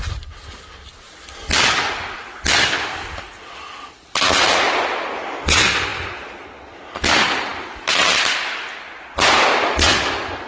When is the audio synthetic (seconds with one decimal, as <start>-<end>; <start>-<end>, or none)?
none